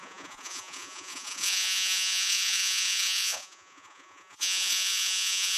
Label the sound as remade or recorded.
remade